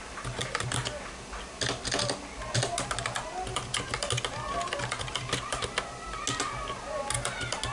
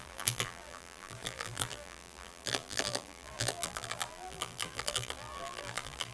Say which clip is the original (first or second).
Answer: first